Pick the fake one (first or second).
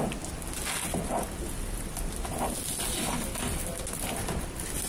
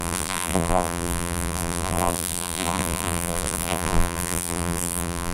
second